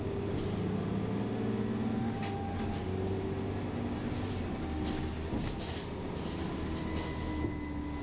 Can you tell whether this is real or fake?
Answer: real